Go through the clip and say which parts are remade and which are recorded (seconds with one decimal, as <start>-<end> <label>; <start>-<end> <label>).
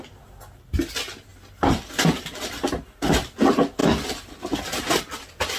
0.0-5.6 recorded